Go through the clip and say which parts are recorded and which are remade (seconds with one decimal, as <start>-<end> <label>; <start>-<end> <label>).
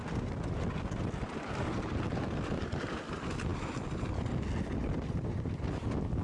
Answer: 0.0-6.2 recorded